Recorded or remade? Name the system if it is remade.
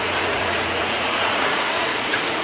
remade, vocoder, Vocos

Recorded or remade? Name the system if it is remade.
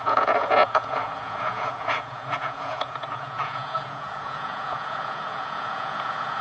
remade, vocoder, Vocos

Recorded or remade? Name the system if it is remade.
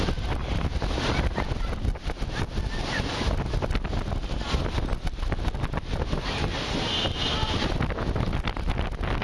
recorded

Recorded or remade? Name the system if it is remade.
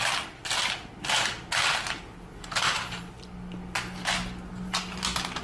recorded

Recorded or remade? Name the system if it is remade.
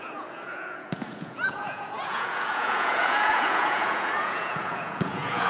remade, vocoder, Vocos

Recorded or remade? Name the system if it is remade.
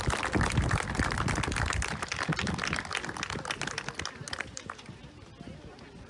recorded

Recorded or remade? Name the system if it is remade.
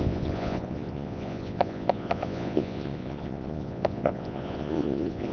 remade, vocoder, Vocos